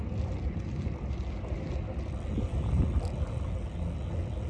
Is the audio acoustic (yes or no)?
yes